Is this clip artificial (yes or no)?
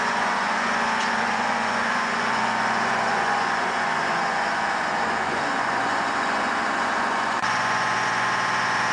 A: yes